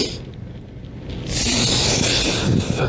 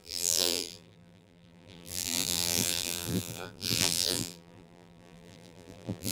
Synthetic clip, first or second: second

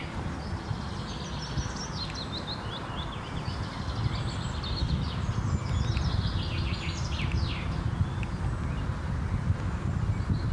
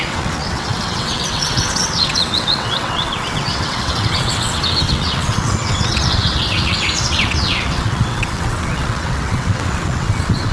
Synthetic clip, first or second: second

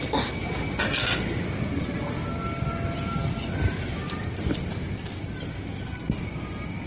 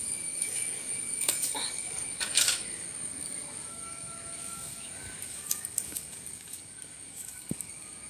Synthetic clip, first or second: second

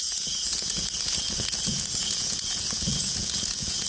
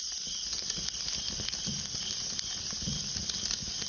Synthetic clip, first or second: first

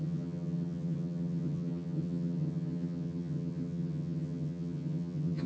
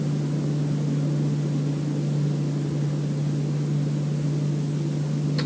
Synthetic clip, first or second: first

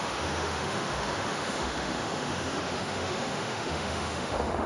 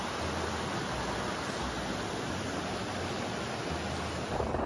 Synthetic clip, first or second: first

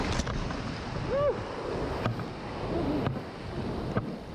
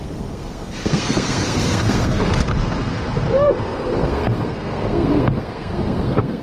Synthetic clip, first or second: second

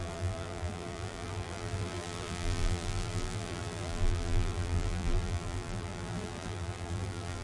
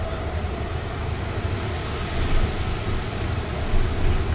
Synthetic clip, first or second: first